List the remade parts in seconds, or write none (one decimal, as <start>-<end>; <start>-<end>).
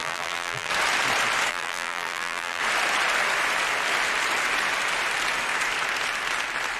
0.0-0.7; 1.5-2.6